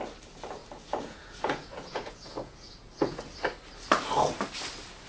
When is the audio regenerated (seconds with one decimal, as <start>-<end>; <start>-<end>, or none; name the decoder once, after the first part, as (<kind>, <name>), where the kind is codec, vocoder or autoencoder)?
0.6-3.2 (vocoder, Vocos)